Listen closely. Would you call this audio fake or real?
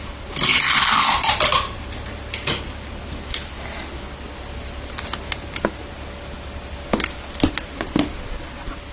real